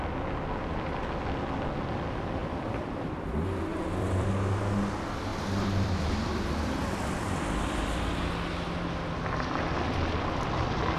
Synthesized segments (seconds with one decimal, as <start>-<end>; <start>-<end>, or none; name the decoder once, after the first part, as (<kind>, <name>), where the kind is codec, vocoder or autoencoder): 2.4-3.2 (vocoder, BigVGAN v2); 3.7-4.3; 5.3-8.3

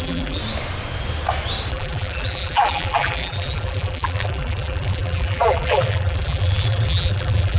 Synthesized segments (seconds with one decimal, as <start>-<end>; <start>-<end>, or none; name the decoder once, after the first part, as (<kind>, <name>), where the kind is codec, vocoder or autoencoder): 0.0-0.4 (vocoder, BigVGAN v2); 1.7-7.6

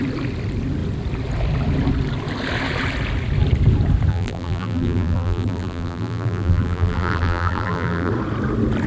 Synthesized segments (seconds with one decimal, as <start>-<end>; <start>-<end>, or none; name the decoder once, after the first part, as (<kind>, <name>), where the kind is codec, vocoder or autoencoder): 4.1-8.1 (vocoder, BigVGAN v2)

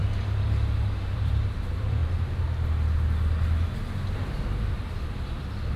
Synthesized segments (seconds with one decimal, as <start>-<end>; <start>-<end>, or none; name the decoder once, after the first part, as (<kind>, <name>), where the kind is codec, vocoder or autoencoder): 1.1-2.0 (vocoder, BigVGAN v2)